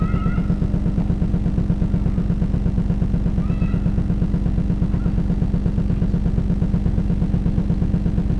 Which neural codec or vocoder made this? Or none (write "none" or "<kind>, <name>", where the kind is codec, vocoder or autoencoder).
none